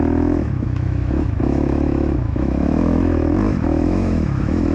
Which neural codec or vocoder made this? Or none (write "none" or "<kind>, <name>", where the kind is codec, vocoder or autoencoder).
autoencoder, DAC-VAE